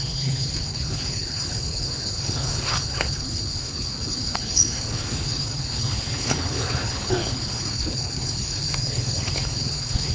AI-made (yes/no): yes